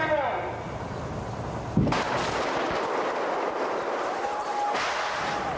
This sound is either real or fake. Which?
real